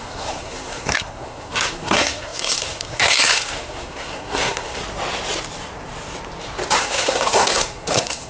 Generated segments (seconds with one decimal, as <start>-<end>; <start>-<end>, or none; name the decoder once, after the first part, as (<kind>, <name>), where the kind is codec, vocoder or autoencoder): 0.0-4.8 (codec, SNAC); 6.8-8.3